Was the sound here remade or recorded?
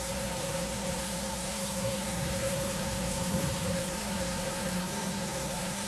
remade